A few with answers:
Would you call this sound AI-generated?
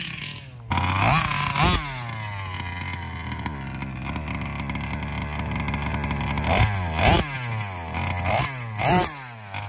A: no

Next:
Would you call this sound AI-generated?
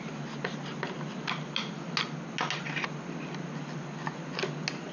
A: no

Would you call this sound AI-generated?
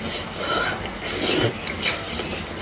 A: no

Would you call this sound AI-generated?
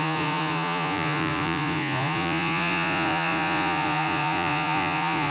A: yes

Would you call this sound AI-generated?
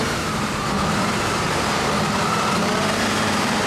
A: yes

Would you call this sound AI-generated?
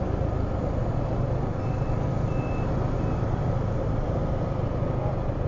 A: no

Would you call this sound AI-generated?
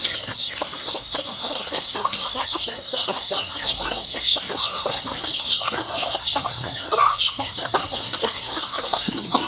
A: yes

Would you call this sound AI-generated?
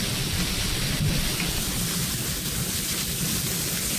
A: no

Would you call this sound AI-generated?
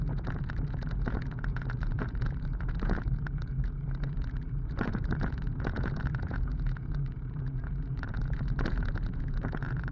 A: yes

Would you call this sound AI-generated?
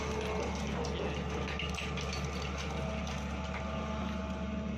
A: no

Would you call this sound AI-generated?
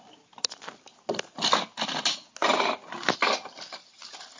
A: no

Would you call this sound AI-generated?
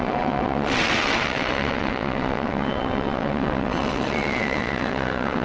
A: yes